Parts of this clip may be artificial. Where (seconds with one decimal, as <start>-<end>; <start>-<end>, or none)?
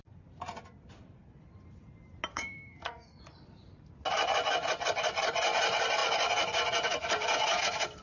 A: 2.3-3.2